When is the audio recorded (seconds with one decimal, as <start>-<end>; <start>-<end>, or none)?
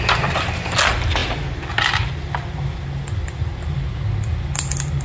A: 0.0-5.0